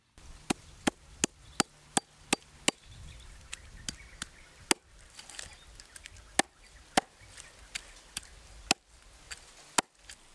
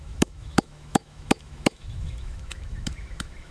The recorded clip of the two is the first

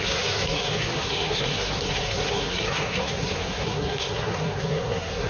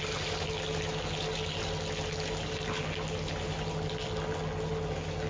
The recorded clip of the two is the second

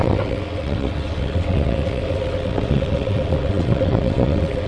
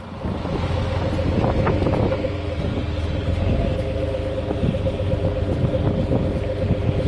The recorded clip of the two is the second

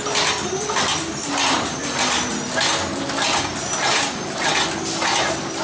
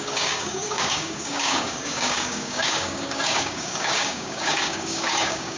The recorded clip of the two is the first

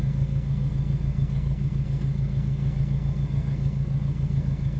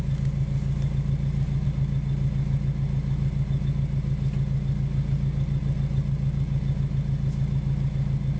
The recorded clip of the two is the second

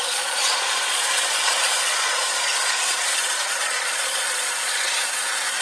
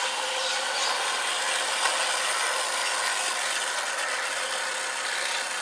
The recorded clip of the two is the second